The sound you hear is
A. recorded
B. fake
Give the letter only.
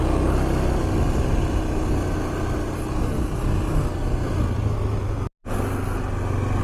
A